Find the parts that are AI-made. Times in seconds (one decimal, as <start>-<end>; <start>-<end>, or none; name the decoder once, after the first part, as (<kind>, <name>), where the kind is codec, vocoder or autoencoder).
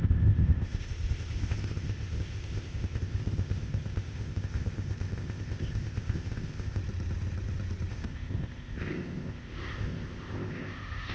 0.0-6.8 (codec, ZipCodec); 7.9-11.1